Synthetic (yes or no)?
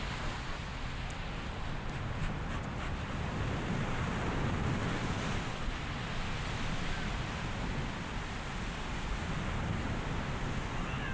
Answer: no